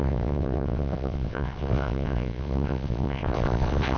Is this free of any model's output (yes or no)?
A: no